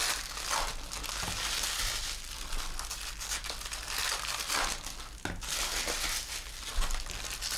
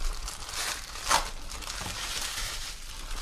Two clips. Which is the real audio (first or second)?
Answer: first